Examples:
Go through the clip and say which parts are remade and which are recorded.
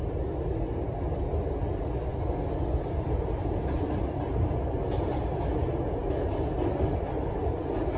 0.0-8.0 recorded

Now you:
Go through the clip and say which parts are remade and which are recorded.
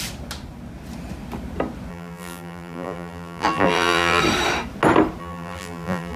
0.0-1.9 recorded; 1.9-4.2 remade; 4.2-5.2 recorded; 5.2-6.2 remade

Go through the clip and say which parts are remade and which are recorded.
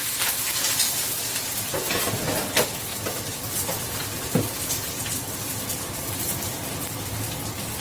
0.0-2.9 recorded; 2.9-7.8 remade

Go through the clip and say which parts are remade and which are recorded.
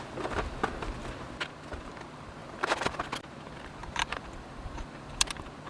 0.0-2.4 recorded; 2.4-3.1 remade; 3.1-3.8 recorded; 3.8-5.3 remade; 5.3-5.7 recorded